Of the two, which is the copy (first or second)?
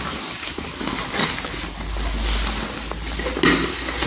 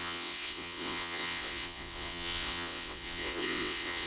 second